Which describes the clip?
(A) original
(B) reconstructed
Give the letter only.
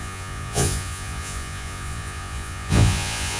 B